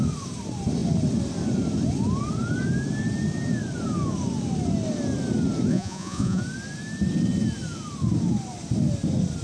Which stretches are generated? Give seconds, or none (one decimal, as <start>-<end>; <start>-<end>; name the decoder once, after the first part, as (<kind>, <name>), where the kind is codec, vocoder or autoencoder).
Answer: 5.7-6.4 (vocoder, Vocos)